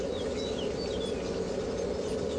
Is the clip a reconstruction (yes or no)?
no